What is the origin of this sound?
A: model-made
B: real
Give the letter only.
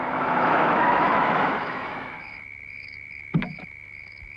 A